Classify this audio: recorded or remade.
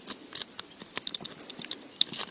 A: recorded